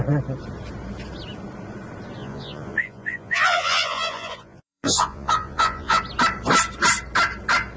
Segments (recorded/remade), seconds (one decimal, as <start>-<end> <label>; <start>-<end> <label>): 0.0-2.2 recorded; 2.2-6.0 remade; 6.0-7.8 recorded